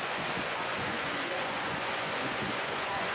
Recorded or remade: remade